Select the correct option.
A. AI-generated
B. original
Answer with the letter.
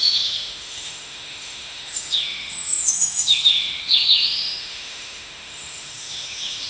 A